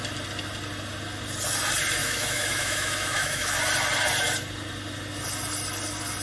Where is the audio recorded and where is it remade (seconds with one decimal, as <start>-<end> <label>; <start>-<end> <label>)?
0.0-2.0 recorded; 2.0-3.5 remade; 3.5-6.2 recorded